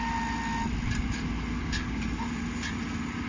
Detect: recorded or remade recorded